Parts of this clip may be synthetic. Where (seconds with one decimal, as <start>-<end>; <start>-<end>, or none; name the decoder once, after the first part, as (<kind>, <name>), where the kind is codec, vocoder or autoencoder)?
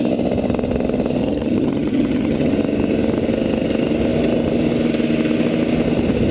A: 1.2-2.5 (vocoder, HiFi-GAN)